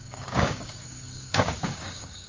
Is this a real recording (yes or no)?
no